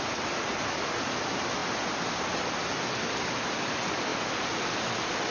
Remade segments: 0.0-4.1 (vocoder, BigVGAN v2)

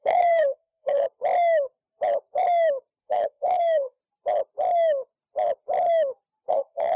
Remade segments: 0.0-1.0 (codec, SNAC); 3.0-4.0; 6.5-7.0

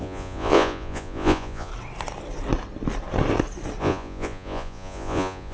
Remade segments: 0.0-1.7 (vocoder, Vocos); 3.8-5.5

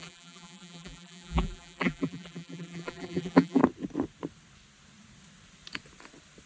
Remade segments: 0.0-3.6 (vocoder, BigVGAN v2)

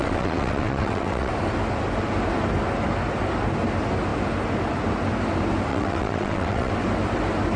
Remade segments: 0.0-1.3 (vocoder, WaveNeXt); 5.7-6.7